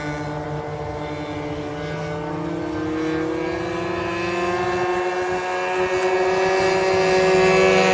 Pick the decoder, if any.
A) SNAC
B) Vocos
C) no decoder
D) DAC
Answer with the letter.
C